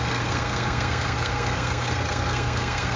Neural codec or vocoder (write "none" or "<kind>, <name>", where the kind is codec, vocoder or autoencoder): codec, SNAC